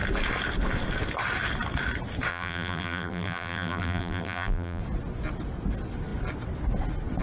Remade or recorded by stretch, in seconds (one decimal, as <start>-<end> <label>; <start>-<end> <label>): 0.0-2.3 recorded; 2.3-4.8 remade; 4.8-7.2 recorded